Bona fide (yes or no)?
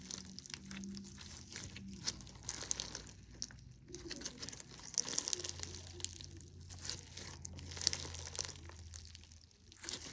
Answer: yes